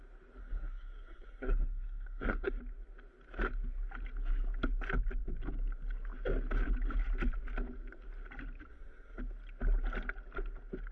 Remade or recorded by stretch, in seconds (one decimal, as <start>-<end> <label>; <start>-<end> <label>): 0.0-0.4 recorded; 0.4-2.6 remade; 2.6-8.7 recorded; 8.7-9.2 remade; 9.2-10.9 recorded